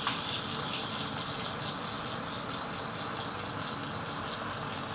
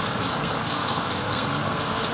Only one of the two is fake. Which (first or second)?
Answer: second